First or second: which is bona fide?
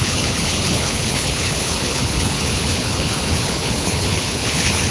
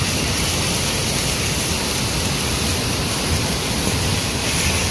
second